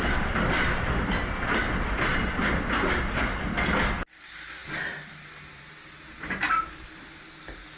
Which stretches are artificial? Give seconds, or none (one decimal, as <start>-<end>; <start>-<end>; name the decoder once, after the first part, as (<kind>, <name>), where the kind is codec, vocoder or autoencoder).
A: none